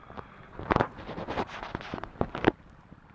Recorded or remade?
remade